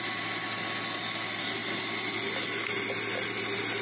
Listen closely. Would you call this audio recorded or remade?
recorded